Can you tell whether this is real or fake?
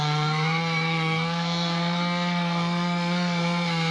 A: fake